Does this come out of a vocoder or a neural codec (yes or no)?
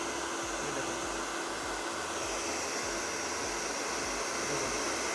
no